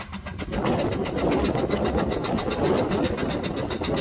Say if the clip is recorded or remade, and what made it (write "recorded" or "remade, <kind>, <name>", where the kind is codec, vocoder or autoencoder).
recorded